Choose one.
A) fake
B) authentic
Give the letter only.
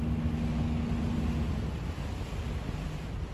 B